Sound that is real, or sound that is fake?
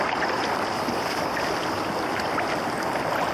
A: real